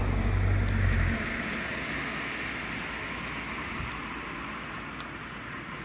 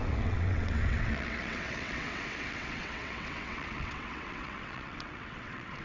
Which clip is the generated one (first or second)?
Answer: second